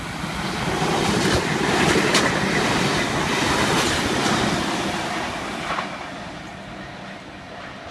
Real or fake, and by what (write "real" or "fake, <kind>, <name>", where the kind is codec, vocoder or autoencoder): real